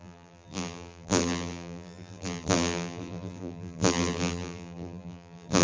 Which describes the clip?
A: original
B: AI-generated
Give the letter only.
B